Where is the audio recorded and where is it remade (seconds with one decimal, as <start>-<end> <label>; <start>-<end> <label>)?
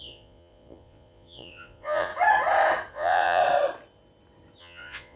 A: 0.0-2.1 remade; 2.1-2.9 recorded; 2.9-3.4 remade; 3.4-4.6 recorded; 4.6-5.2 remade